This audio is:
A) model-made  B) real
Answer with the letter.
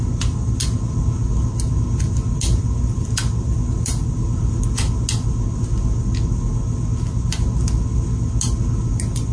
B